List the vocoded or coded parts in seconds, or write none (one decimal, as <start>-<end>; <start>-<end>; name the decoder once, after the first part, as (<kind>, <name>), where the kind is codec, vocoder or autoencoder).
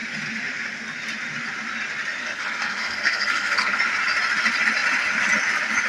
2.2-3.8 (codec, SNAC)